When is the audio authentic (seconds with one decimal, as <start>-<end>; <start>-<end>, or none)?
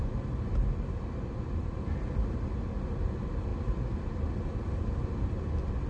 0.0-5.9